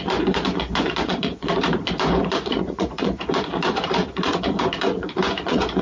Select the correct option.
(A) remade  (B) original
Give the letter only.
A